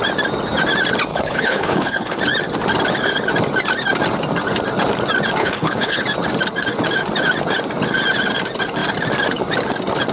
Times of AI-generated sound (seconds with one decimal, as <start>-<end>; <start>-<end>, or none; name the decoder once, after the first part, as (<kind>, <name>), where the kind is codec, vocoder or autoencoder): 1.1-2.2 (codec, HILCodec); 5.4-6.0